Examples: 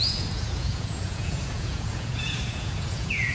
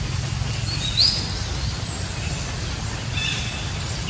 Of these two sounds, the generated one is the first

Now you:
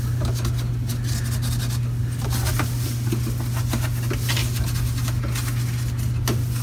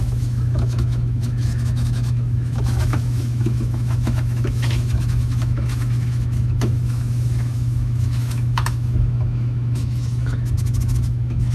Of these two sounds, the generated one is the second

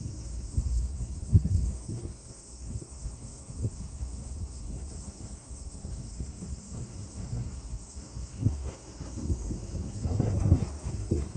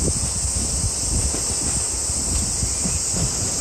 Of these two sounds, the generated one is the first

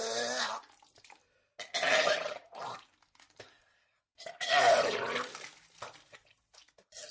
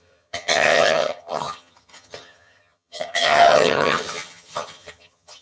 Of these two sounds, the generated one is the second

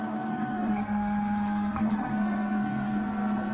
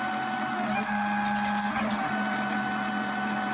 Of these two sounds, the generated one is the first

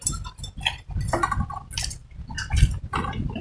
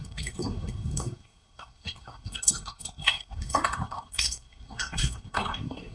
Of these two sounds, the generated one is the second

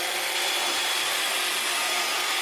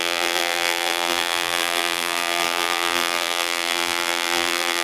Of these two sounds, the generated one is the second